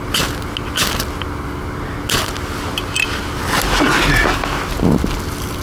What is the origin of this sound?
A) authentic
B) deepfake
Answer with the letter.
A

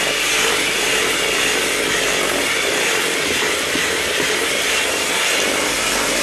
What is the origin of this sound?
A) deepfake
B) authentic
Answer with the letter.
B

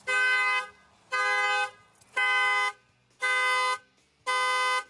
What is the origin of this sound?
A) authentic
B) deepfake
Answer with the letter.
A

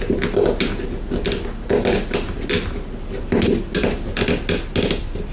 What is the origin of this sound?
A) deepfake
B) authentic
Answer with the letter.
B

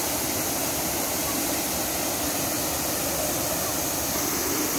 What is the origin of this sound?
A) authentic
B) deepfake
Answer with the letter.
A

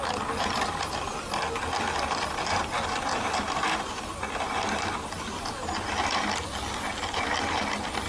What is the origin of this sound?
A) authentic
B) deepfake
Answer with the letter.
A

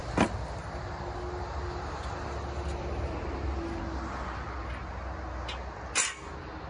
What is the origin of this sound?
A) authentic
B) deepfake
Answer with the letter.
A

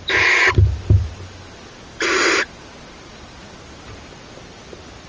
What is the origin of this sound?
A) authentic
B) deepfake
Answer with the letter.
A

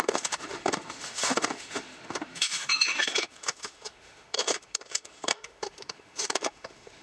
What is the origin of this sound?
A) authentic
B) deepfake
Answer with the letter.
B